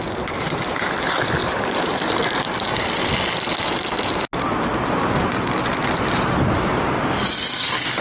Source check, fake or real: real